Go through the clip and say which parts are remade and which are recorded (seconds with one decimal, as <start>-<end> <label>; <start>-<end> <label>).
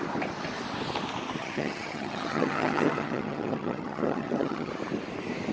0.0-1.4 recorded; 1.4-4.7 remade; 4.7-5.5 recorded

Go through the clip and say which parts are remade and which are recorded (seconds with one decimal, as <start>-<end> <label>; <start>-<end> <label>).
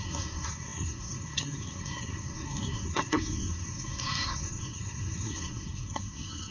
0.0-6.5 remade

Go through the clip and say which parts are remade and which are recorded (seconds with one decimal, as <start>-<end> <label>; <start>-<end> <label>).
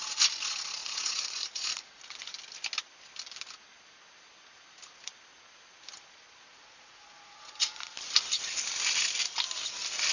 0.0-0.8 recorded; 0.8-2.3 remade; 2.3-6.5 recorded; 6.5-7.9 remade; 7.9-10.1 recorded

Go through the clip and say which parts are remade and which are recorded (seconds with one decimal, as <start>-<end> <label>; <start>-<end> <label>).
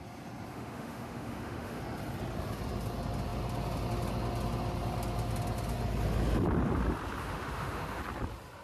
0.0-0.5 recorded; 0.5-1.8 remade; 1.8-7.2 recorded; 7.2-8.0 remade; 8.0-8.6 recorded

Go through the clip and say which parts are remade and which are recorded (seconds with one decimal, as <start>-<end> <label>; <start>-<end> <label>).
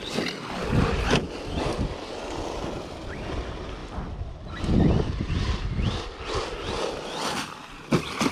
0.0-8.3 recorded